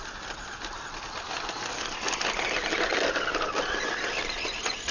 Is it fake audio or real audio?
real